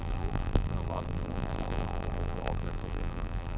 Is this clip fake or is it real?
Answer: fake